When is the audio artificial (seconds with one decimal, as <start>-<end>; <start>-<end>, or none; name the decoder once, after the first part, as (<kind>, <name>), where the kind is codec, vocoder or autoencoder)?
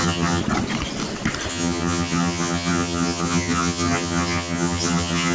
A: 0.0-0.4 (vocoder, HiFi-GAN); 1.5-5.3